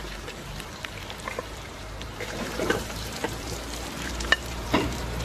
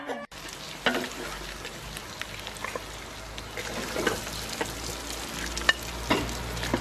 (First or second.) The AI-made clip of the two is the first